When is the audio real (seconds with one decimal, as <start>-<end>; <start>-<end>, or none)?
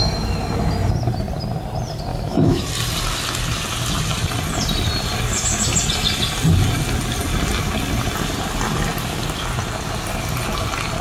0.0-2.1; 2.6-11.0